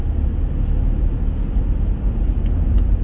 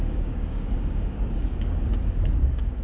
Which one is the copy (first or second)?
second